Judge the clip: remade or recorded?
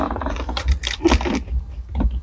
recorded